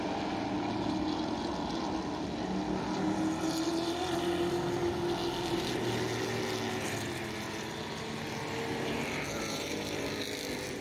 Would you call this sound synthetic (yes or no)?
no